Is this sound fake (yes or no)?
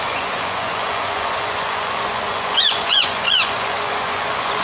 yes